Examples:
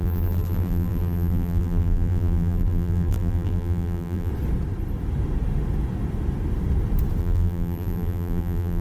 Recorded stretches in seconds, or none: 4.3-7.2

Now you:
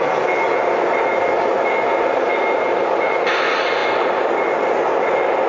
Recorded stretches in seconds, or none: 0.0-3.8; 4.3-5.5

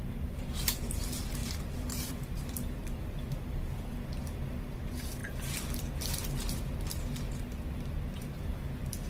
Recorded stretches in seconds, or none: 0.0-1.4; 3.6-9.1

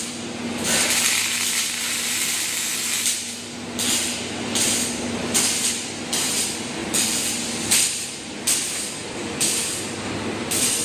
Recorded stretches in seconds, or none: 2.7-4.3; 6.8-7.4

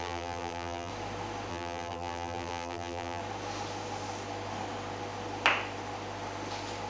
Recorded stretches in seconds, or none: 0.9-1.5; 3.2-6.9